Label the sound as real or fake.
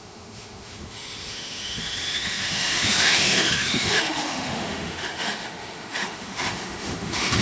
fake